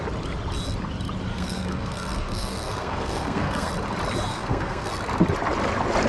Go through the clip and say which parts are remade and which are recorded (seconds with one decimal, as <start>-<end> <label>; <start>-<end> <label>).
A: 0.0-1.3 recorded; 1.3-3.7 remade; 3.7-4.3 recorded; 4.3-4.9 remade; 4.9-6.1 recorded